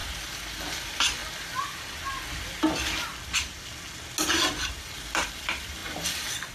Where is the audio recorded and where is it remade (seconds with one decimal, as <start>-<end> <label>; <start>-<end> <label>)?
0.0-1.2 remade; 1.2-4.6 recorded; 4.6-6.5 remade

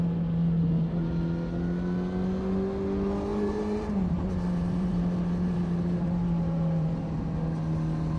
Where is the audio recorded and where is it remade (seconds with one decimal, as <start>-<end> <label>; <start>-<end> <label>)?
0.0-3.3 recorded; 3.3-6.9 remade; 6.9-8.2 recorded

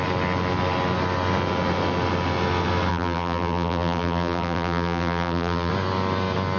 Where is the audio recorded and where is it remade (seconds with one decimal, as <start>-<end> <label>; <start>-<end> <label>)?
0.0-2.9 recorded; 2.9-5.7 remade; 5.7-6.6 recorded

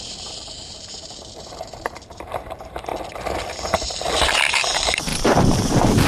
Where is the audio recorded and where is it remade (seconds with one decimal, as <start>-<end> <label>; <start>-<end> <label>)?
0.0-2.9 remade; 2.9-3.4 recorded; 3.4-6.1 remade

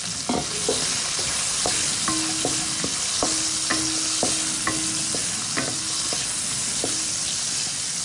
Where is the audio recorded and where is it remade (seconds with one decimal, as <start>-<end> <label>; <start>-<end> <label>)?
0.0-6.6 recorded; 6.6-7.2 remade; 7.2-8.0 recorded

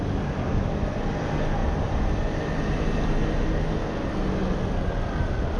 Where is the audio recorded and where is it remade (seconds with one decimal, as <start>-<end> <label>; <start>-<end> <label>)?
0.0-5.6 recorded

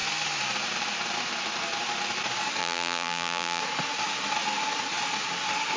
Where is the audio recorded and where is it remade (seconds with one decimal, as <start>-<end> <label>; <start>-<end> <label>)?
0.0-2.6 recorded; 2.6-3.6 remade; 3.6-5.8 recorded